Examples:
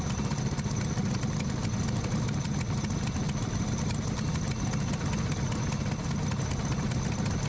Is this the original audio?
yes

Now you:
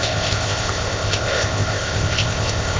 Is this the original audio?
no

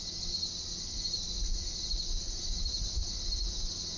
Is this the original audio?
yes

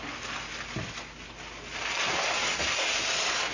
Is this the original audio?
yes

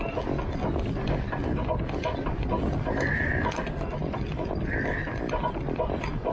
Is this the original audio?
yes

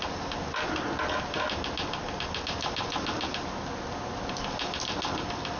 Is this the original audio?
yes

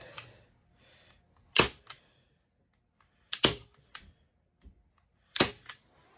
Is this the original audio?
yes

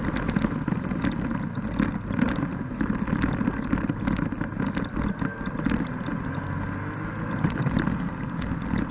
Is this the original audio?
yes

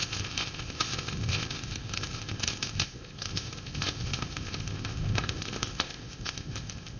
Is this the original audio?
no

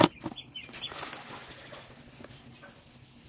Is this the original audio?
yes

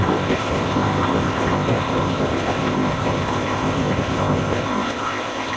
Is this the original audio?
no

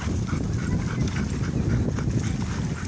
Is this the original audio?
yes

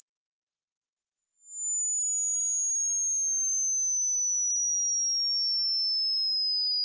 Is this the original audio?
yes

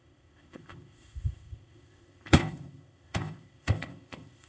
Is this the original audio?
no